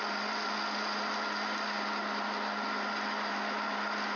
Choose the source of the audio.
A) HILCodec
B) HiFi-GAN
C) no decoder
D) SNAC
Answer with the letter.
C